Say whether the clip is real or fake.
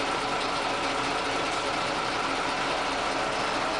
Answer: real